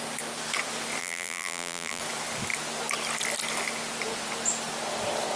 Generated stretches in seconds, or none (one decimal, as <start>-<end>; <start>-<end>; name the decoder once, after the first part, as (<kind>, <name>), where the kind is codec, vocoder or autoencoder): 1.0-2.0 (vocoder, BigVGAN v2)